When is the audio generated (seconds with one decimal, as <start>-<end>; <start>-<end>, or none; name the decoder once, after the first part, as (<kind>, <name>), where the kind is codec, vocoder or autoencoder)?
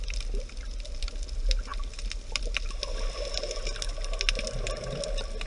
none